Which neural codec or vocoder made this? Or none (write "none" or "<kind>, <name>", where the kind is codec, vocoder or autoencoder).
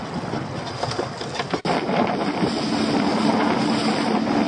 none